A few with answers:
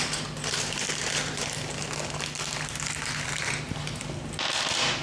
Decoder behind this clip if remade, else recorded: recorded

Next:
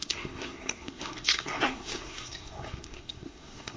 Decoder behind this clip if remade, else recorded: remade, codec, SNAC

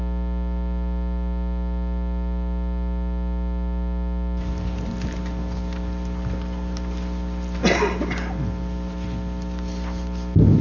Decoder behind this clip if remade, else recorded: recorded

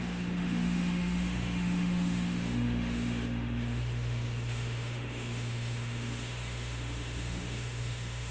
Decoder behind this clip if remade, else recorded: remade, autoencoder, DAC-VAE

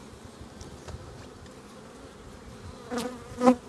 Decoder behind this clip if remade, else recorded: recorded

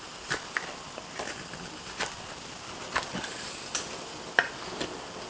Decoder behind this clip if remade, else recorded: recorded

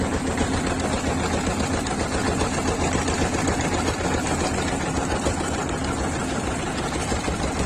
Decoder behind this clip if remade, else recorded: recorded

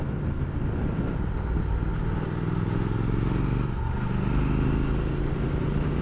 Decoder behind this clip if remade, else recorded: recorded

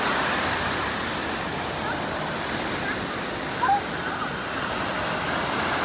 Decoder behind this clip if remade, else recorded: recorded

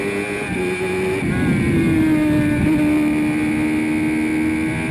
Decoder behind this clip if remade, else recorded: recorded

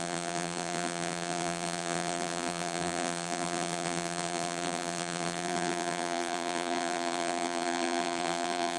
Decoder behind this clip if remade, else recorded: remade, vocoder, BigVGAN v2